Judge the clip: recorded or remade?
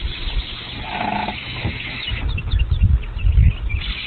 recorded